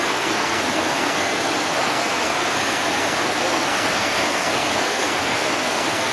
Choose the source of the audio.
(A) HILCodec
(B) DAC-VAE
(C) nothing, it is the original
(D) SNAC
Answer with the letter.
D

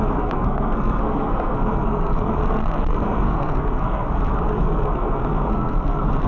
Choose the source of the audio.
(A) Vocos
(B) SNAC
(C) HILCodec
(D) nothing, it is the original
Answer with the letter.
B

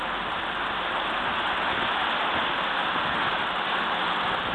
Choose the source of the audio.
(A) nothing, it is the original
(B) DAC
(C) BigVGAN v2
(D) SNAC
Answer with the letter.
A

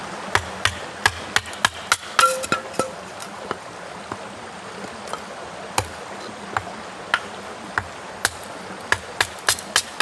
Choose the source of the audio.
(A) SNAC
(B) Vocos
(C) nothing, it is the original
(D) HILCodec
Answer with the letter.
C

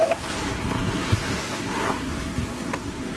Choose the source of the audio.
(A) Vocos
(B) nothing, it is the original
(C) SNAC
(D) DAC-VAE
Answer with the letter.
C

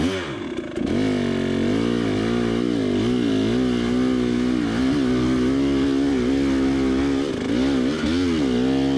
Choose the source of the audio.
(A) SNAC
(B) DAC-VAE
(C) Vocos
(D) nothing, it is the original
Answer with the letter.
D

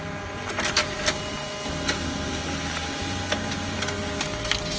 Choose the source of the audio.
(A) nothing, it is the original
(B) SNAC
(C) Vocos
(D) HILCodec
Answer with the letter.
A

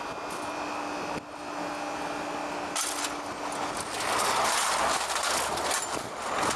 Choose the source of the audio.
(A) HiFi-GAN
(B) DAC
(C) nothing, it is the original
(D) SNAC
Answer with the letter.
C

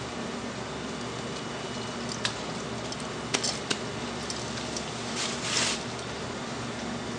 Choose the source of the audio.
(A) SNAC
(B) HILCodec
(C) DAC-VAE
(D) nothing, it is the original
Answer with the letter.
D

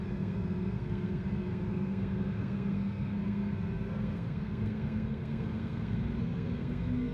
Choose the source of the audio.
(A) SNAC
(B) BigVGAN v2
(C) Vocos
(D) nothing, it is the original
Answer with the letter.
A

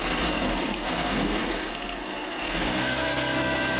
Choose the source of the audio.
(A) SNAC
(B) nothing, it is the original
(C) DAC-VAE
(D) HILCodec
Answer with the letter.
A